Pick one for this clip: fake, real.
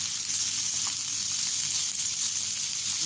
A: real